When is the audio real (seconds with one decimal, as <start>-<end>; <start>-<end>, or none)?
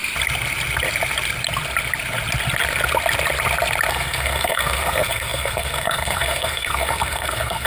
0.0-3.9